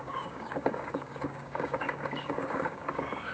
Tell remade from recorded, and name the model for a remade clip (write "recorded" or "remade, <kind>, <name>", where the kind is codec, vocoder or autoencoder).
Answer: remade, codec, DAC